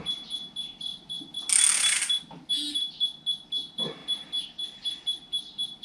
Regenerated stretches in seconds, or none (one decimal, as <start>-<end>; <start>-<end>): none